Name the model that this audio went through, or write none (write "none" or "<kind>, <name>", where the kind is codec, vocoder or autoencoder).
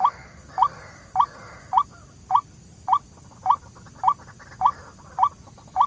none